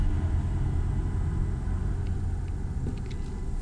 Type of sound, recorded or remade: recorded